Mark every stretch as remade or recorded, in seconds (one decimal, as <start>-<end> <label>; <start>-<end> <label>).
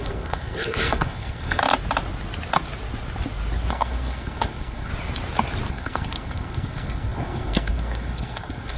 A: 0.0-1.6 remade; 1.6-3.7 recorded; 3.7-4.9 remade; 4.9-5.7 recorded; 5.7-8.8 remade